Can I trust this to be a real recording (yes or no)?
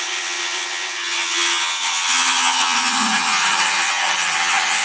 no